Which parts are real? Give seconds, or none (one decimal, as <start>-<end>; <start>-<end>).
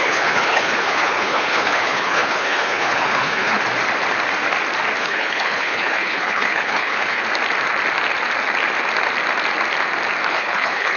3.6-5.0; 7.2-10.3